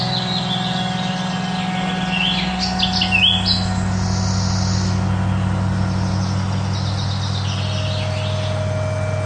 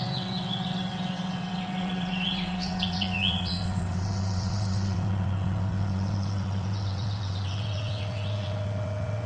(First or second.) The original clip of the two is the first